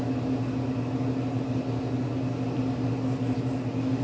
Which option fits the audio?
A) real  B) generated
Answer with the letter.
A